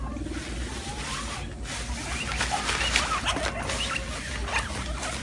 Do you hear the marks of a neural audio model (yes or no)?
no